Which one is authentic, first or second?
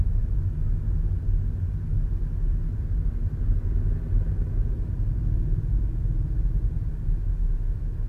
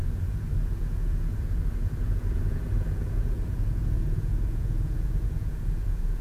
first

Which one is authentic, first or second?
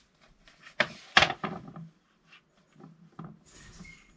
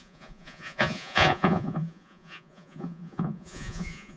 first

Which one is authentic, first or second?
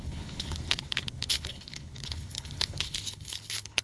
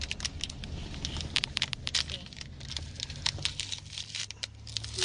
second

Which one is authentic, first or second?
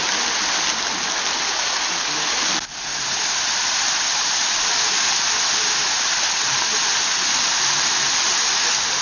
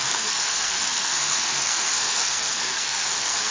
first